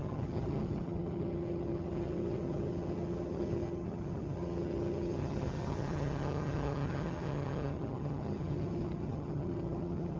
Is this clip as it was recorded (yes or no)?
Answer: no